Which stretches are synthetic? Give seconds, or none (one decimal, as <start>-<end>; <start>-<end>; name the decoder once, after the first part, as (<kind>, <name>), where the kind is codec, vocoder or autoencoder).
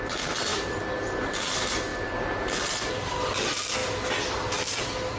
0.5-1.4 (vocoder, BigVGAN v2); 1.9-2.8